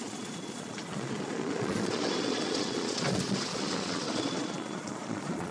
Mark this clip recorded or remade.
remade